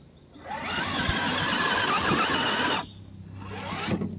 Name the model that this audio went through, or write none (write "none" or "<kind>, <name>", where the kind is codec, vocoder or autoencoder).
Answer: none